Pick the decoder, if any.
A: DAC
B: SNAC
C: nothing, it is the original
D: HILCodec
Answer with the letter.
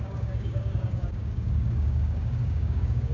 A